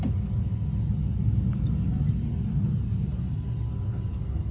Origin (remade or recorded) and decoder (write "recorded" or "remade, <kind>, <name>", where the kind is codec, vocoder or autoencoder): recorded